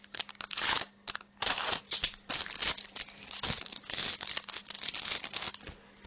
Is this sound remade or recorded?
recorded